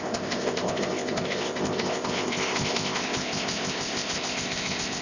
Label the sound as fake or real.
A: fake